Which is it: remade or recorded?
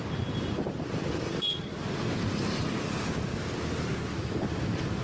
recorded